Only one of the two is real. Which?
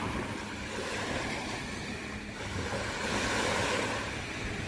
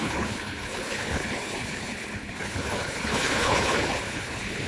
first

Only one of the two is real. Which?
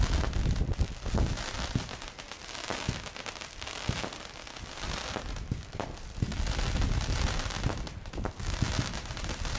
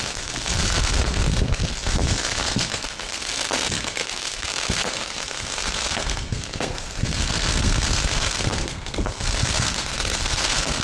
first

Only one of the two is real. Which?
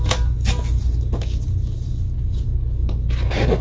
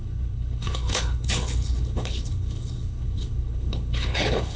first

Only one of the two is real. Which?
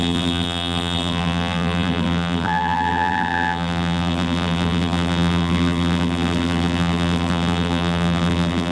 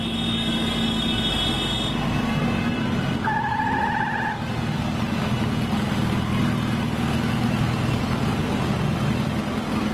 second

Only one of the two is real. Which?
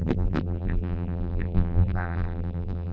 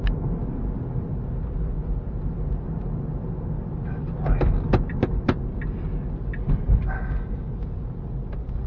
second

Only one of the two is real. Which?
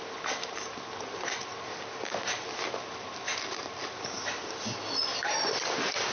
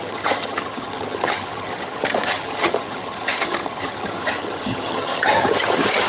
first